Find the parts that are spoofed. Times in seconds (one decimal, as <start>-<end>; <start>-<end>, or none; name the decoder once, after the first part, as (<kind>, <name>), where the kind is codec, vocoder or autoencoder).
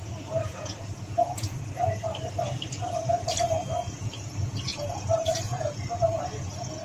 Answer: 0.0-2.1 (vocoder, Vocos); 4.0-6.8